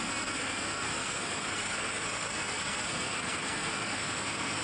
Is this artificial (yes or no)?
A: yes